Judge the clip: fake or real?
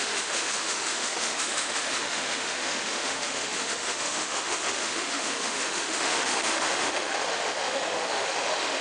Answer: fake